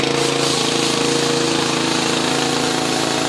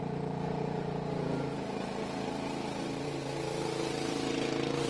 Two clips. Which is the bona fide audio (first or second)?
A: first